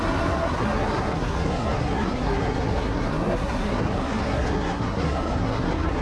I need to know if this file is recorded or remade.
remade